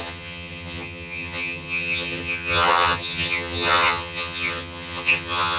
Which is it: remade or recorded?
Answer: remade